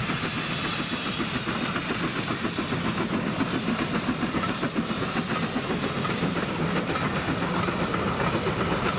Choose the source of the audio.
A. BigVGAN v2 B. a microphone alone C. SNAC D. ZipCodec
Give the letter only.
B